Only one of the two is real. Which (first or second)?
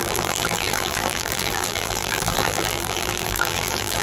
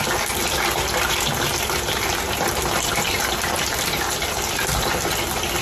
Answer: second